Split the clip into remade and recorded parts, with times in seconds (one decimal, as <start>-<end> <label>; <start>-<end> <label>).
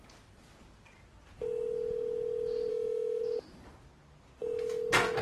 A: 0.0-2.7 recorded; 2.7-3.2 remade; 3.2-5.2 recorded